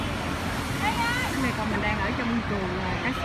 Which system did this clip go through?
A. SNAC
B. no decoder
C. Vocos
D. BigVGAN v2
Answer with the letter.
B